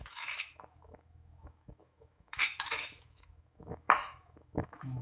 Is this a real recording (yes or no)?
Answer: no